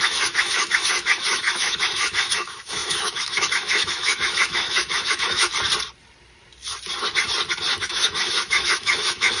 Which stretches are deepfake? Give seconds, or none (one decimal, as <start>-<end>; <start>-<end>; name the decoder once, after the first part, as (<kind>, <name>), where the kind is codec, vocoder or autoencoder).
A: 0.0-5.5 (autoencoder, DAC-VAE); 7.7-9.4